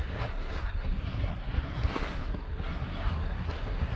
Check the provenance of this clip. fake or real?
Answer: fake